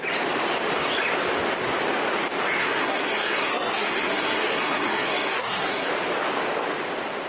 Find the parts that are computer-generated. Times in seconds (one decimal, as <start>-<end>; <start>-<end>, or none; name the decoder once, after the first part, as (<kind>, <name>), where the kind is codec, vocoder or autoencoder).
2.6-5.9 (codec, SNAC)